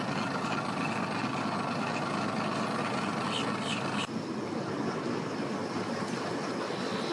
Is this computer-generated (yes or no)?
no